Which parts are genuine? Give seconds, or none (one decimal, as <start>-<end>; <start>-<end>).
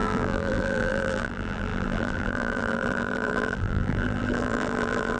none